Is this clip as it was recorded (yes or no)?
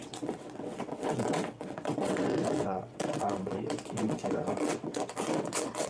no